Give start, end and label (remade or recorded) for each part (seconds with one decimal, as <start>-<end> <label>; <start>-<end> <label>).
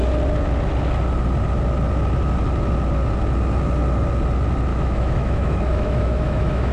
0.0-4.7 recorded; 4.7-6.7 remade